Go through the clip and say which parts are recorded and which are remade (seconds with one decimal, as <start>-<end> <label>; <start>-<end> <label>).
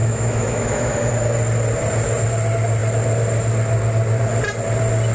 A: 0.0-1.1 remade; 1.1-5.1 recorded